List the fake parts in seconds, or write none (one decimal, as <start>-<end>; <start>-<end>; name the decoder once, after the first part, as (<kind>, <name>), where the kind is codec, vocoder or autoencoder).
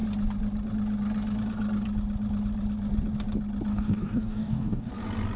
3.7-4.9 (codec, DAC)